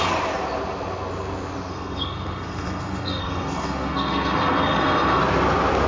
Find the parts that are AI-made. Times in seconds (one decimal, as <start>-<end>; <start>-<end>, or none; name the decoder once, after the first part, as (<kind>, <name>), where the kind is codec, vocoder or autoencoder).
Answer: 1.7-5.2 (codec, SNAC)